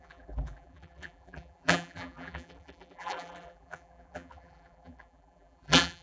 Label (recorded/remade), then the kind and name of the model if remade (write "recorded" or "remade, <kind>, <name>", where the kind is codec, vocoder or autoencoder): remade, vocoder, BigVGAN v2